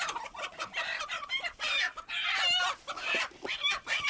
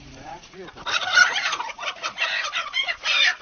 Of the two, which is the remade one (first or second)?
second